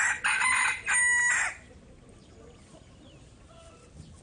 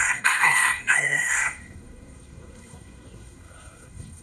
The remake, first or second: second